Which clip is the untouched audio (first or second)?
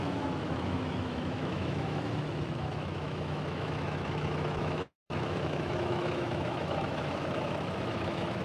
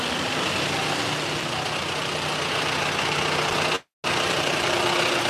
second